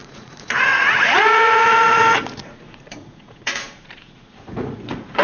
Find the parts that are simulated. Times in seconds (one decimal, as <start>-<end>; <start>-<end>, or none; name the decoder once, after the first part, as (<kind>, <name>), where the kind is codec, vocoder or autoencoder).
0.0-5.2 (vocoder, Vocos)